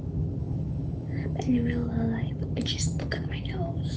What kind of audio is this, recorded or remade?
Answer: remade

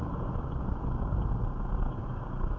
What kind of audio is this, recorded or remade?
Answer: recorded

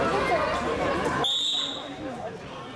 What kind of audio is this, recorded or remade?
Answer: recorded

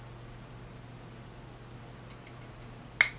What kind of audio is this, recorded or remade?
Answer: recorded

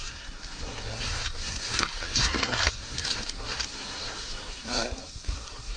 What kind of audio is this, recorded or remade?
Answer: remade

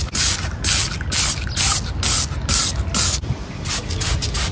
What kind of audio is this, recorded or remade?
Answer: recorded